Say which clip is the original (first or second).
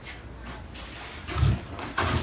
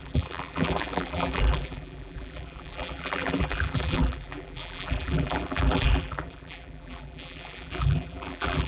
first